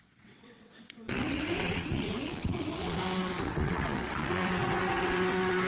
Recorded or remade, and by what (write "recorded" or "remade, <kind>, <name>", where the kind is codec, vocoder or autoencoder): remade, vocoder, WaveNeXt